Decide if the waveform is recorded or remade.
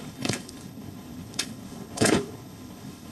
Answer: remade